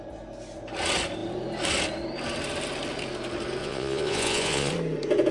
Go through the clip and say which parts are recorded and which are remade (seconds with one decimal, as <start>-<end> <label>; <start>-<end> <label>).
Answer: 0.0-3.6 recorded; 3.6-4.7 remade; 4.7-5.3 recorded